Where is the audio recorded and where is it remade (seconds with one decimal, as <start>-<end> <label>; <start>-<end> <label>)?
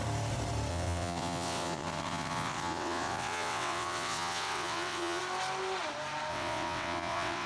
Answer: 0.0-0.7 recorded; 0.7-5.2 remade; 5.2-6.3 recorded; 6.3-7.5 remade